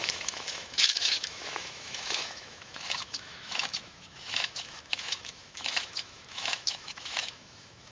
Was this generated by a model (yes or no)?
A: yes